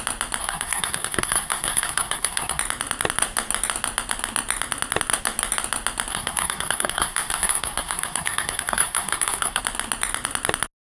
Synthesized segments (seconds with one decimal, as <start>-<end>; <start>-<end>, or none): 0.4-2.6; 6.1-9.6